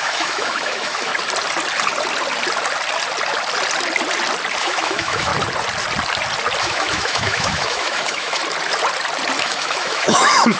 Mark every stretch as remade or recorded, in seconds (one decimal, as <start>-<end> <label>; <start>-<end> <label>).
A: 0.0-1.1 remade; 1.1-4.6 recorded; 4.6-5.3 remade; 5.3-6.6 recorded; 6.6-8.4 remade; 8.4-9.4 recorded; 9.4-10.6 remade